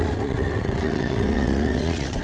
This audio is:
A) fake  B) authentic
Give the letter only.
A